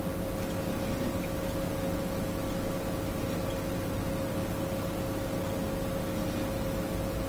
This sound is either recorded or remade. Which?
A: recorded